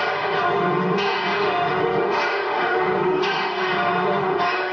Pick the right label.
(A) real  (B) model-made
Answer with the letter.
B